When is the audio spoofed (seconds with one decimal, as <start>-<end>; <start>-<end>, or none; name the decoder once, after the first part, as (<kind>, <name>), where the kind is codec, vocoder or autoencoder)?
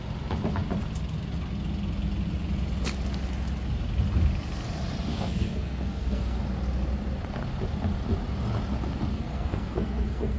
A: 5.1-6.4 (codec, SNAC); 9.1-10.4